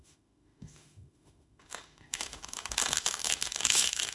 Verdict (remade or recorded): remade